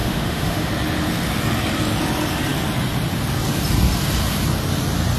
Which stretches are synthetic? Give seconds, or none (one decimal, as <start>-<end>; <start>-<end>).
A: 0.0-0.7